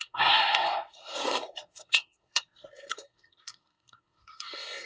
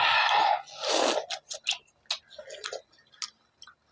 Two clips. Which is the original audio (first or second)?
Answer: second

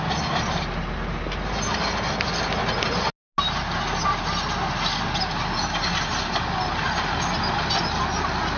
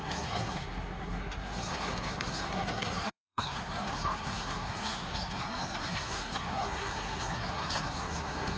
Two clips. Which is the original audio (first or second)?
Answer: first